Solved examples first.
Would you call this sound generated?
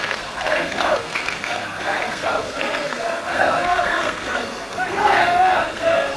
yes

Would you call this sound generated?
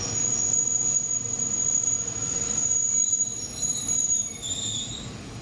no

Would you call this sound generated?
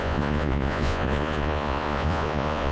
yes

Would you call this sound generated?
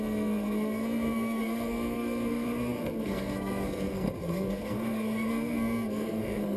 yes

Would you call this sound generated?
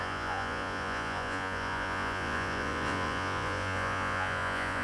yes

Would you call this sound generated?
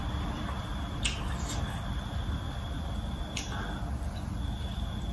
no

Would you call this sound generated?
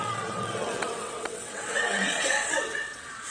yes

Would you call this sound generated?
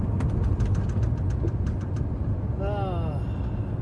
no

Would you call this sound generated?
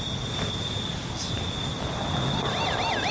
no